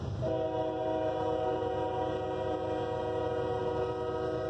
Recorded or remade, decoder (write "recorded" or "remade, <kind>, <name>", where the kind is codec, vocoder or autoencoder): recorded